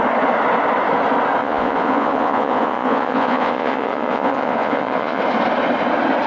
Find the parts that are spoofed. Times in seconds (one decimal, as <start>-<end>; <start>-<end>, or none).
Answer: 1.4-5.2